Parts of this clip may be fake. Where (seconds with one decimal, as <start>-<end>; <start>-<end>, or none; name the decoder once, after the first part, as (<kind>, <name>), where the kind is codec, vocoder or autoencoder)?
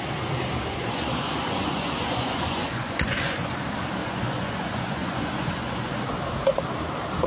0.7-3.5 (vocoder, Vocos); 4.0-6.1